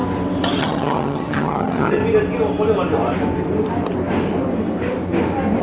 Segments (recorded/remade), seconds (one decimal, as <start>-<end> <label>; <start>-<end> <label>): 0.0-0.6 recorded; 0.6-2.0 remade; 2.0-5.6 recorded